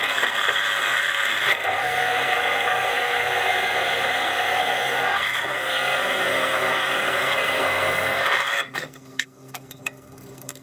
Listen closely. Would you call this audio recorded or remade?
remade